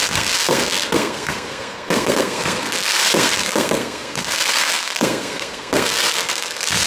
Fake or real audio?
fake